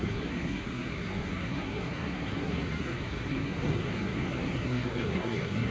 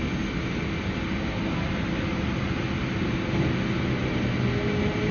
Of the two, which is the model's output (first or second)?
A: first